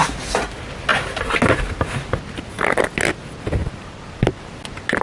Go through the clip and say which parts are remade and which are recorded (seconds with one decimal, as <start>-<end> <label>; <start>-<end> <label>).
0.0-5.0 recorded